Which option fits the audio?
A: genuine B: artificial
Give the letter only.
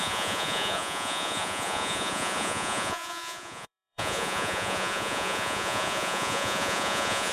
B